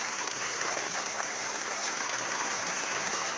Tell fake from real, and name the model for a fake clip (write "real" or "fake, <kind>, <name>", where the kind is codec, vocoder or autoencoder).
fake, codec, SNAC